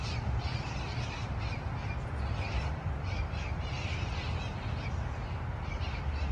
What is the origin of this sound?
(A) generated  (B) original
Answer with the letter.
A